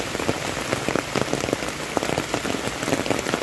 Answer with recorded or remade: recorded